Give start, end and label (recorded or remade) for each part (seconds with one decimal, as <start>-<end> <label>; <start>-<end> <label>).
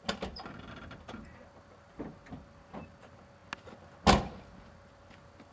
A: 0.0-5.5 recorded